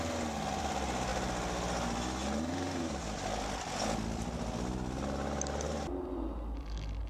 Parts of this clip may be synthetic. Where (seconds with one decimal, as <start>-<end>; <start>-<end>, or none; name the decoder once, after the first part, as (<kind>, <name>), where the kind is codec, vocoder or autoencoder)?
none